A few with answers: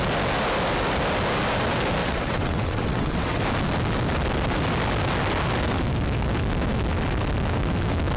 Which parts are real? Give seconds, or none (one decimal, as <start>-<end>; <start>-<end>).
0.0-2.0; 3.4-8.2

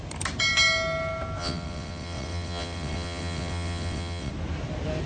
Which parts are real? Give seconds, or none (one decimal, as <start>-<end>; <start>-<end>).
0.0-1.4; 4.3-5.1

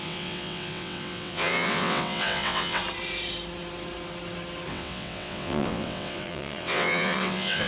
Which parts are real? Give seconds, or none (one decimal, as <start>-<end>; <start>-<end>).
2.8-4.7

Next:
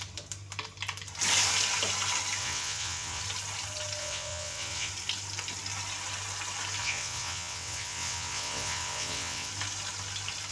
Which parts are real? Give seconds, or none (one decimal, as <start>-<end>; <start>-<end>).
0.0-2.4; 3.2-4.0; 4.9-6.8; 9.5-10.5

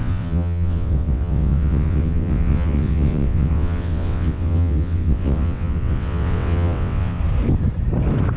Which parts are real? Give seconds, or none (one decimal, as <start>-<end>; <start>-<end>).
7.2-8.4

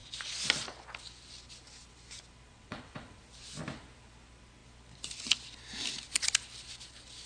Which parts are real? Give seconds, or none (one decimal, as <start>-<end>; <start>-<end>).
0.0-2.5; 3.2-7.3

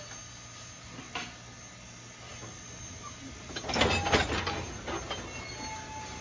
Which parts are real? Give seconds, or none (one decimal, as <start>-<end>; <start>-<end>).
0.0-6.2